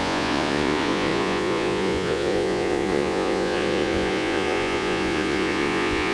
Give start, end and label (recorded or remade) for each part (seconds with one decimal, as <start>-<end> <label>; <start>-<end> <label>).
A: 0.0-6.1 remade